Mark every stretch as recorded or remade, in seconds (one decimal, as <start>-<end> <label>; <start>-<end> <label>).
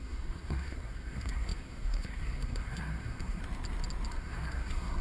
0.0-3.4 remade; 3.4-4.1 recorded; 4.1-5.0 remade